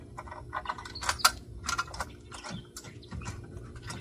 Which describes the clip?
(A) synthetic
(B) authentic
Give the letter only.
B